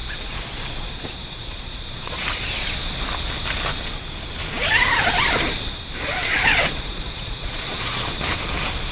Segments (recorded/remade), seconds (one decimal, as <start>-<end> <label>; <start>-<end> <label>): 0.0-2.2 remade; 2.2-6.2 recorded; 6.2-8.1 remade; 8.1-8.9 recorded